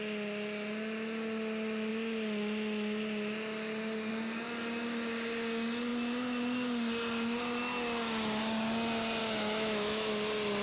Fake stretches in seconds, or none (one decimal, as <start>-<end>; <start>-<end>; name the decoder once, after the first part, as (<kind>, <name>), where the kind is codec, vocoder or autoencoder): 9.2-10.1 (autoencoder, DAC-VAE)